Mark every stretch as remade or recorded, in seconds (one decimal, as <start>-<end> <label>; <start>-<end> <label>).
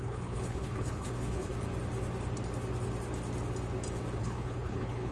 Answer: 0.0-1.5 remade; 1.5-4.2 recorded; 4.2-5.1 remade